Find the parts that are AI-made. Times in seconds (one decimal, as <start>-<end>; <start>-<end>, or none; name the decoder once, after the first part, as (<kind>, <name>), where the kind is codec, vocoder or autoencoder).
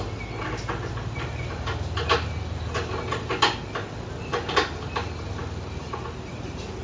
none